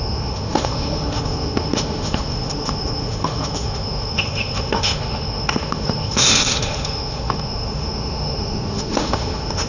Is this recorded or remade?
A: remade